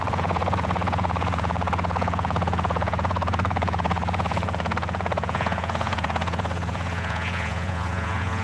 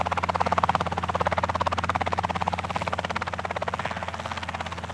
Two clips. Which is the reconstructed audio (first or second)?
first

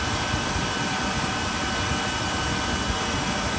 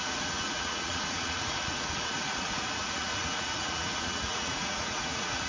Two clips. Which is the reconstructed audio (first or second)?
second